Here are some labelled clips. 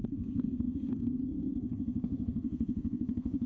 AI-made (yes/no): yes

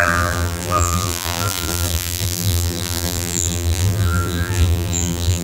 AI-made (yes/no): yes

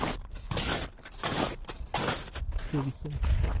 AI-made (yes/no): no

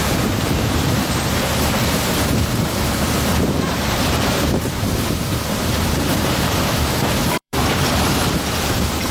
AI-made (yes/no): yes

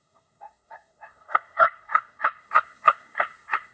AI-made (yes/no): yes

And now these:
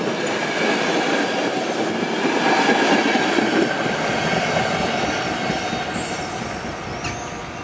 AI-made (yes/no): no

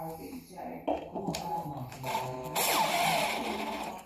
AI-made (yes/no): no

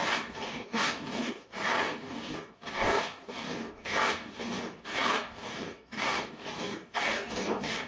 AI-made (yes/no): yes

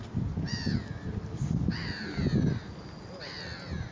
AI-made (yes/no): no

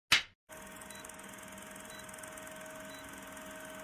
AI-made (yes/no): no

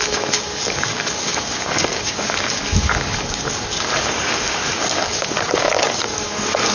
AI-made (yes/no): yes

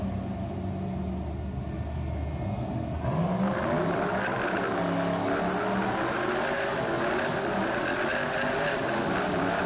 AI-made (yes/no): no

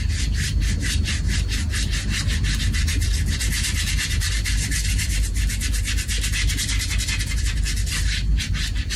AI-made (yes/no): no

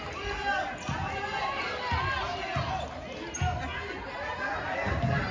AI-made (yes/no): no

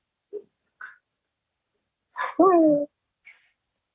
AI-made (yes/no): no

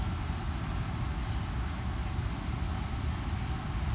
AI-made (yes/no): no